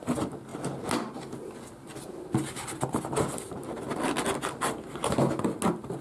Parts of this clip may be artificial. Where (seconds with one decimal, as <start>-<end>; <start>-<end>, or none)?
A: none